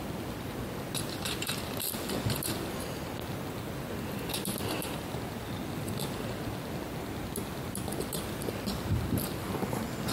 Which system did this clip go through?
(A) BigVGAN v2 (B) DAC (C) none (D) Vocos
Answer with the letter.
C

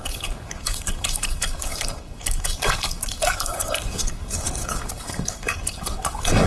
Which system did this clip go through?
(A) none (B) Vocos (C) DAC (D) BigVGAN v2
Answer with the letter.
C